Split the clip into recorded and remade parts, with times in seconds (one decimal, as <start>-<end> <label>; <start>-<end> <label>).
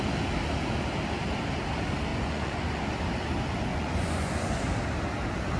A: 0.0-2.1 recorded; 2.1-2.9 remade; 2.9-3.7 recorded; 3.7-4.6 remade; 4.6-5.6 recorded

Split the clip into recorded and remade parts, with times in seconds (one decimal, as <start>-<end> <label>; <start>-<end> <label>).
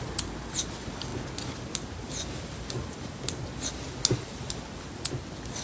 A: 0.0-5.6 recorded